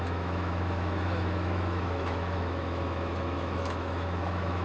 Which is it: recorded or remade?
remade